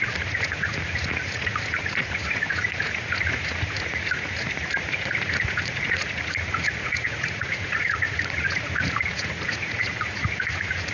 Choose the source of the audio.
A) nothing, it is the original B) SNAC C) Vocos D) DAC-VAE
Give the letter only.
C